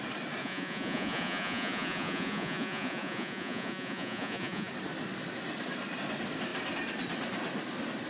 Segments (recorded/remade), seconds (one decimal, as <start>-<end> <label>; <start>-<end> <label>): 0.0-0.4 recorded; 0.4-4.7 remade; 4.7-8.1 recorded